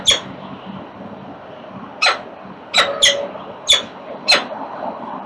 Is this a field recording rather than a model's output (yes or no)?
yes